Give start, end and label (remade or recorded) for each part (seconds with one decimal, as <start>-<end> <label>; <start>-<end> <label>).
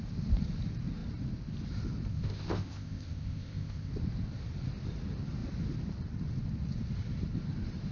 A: 0.0-2.1 recorded; 2.1-3.9 remade; 3.9-7.9 recorded